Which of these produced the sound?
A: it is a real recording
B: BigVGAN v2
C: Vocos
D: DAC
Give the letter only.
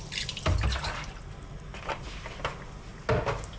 A